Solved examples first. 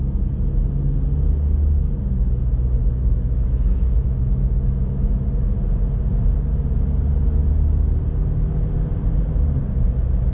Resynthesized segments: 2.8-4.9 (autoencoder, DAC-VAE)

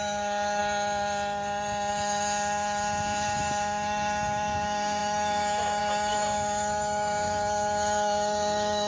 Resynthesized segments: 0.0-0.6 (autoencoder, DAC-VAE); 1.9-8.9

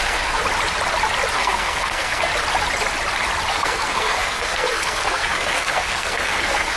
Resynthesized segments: 0.0-0.4 (codec, SNAC); 1.3-2.3; 3.5-6.8

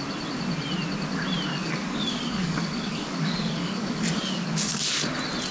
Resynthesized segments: 1.5-4.8 (codec, DAC)

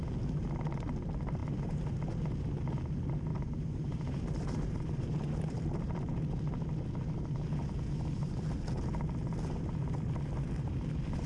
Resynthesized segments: 1.4-2.0 (vocoder, BigVGAN v2); 3.3-6.2